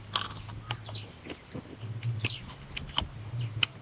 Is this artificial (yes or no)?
no